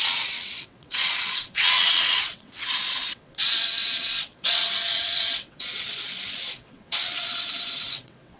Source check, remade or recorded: remade